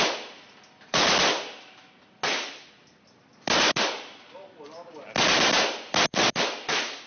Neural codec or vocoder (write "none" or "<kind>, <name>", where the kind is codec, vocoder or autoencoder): none